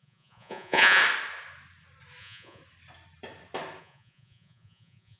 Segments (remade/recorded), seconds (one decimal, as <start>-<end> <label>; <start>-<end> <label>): 0.0-1.0 remade; 1.0-2.2 recorded; 2.2-2.6 remade; 2.6-3.8 recorded; 3.8-5.2 remade